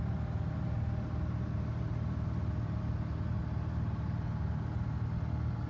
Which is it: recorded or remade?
recorded